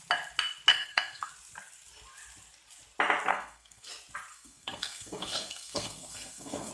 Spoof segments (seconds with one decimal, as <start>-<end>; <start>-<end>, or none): 0.7-1.3; 3.3-3.9; 4.3-6.7